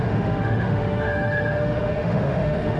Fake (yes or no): yes